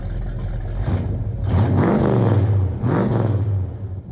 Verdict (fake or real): real